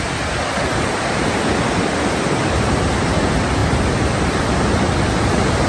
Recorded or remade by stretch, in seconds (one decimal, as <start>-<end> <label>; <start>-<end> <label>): 0.0-5.7 recorded